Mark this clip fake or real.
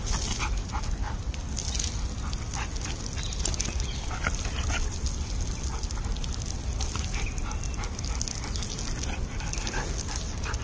real